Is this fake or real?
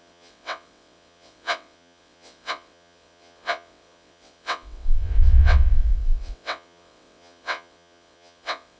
fake